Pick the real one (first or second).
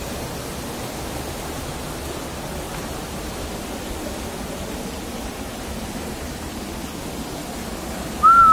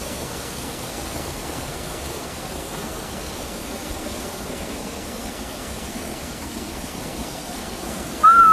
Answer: first